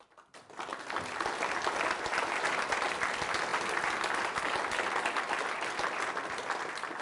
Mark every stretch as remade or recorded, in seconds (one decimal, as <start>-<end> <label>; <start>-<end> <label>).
0.0-7.0 recorded